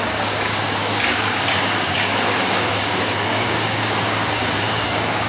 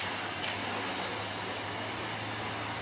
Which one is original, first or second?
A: second